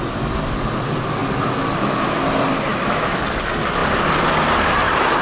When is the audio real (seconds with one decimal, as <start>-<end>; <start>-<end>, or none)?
0.0-2.7; 3.2-5.2